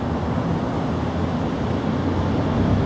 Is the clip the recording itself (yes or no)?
yes